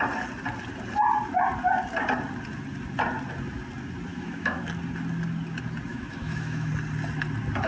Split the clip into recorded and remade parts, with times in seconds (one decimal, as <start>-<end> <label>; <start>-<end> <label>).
0.0-4.1 recorded; 4.1-4.7 remade; 4.7-5.9 recorded; 5.9-6.7 remade; 6.7-7.7 recorded